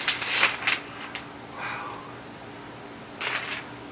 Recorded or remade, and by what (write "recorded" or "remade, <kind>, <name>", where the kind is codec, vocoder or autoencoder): recorded